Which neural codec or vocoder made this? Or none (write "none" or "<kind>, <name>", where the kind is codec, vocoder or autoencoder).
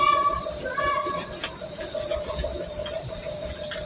none